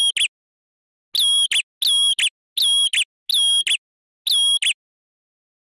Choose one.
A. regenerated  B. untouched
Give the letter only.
B